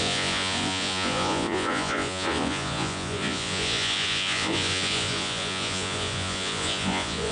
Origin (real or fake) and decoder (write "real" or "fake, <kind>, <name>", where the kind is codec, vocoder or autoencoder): fake, vocoder, Vocos